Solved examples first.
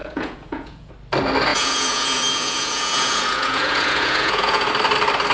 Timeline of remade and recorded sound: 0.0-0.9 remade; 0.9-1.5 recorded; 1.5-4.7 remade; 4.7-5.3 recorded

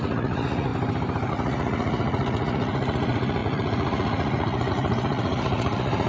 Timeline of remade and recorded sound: 0.0-0.7 remade; 0.7-1.3 recorded; 1.3-6.1 remade